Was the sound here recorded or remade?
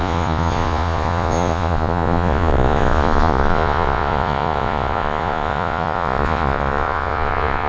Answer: remade